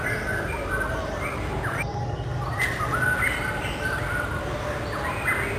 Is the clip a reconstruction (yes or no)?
no